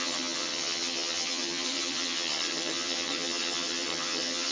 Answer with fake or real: fake